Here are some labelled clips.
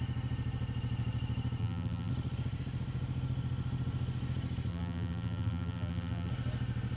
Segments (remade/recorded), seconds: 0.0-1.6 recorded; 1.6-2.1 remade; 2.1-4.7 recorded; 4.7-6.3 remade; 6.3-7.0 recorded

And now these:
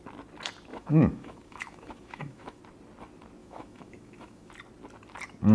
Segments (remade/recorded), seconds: 0.0-0.7 recorded; 0.7-2.6 remade; 2.6-3.4 recorded; 3.4-4.5 remade; 4.5-5.5 recorded

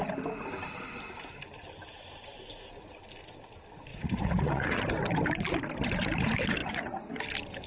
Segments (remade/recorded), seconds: 0.0-3.9 recorded; 3.9-4.8 remade; 4.8-6.6 recorded; 6.6-7.2 remade; 7.2-7.7 recorded